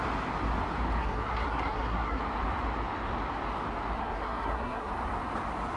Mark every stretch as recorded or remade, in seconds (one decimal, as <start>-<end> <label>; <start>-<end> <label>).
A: 0.0-1.0 recorded; 1.0-2.2 remade; 2.2-4.0 recorded; 4.0-4.9 remade; 4.9-5.8 recorded